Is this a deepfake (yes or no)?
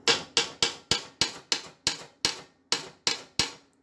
no